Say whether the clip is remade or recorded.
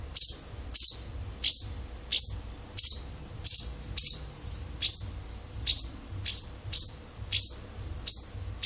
remade